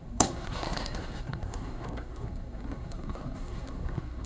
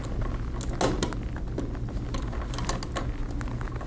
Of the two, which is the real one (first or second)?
second